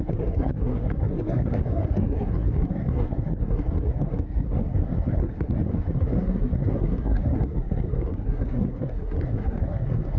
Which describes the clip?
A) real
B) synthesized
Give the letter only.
B